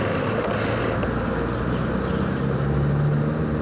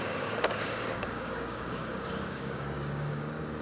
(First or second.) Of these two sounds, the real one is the first